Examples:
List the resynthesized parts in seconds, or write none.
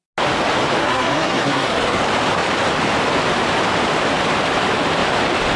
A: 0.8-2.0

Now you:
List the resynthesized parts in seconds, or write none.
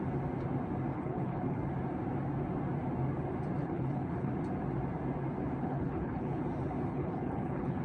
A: 0.9-1.6; 3.6-4.3; 5.6-6.4; 6.9-7.8